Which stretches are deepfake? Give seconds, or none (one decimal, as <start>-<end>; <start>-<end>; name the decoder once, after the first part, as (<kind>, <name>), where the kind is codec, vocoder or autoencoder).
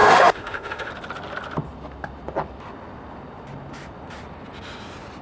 0.0-0.9 (autoencoder, DAC-VAE)